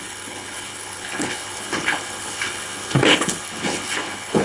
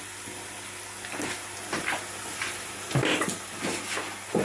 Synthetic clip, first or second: first